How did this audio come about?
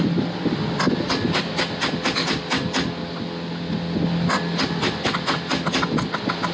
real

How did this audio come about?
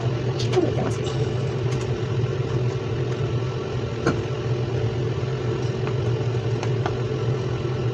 real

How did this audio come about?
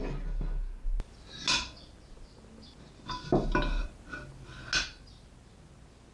real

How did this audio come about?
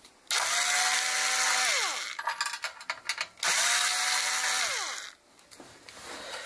real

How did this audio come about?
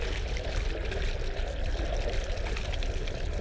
real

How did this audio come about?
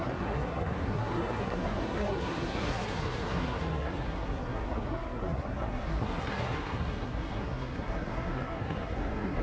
fake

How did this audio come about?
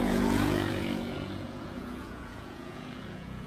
fake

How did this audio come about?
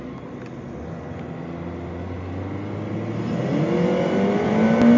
real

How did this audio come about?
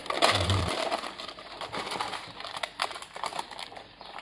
real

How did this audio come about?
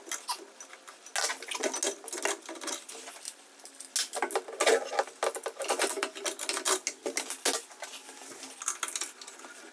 real